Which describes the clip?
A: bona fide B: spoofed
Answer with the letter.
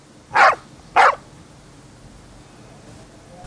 A